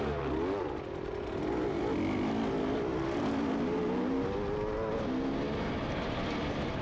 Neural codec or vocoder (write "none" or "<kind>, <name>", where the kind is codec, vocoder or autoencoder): none